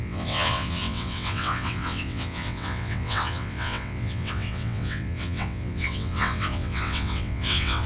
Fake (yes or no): yes